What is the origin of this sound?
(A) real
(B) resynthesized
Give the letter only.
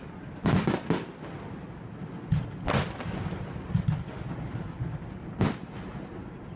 A